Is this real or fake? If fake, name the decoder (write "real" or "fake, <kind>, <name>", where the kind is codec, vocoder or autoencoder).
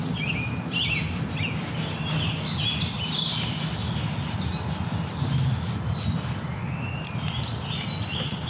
real